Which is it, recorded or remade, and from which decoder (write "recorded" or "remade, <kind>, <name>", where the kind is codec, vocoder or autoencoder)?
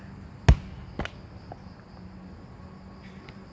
recorded